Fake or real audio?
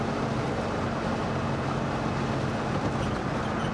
real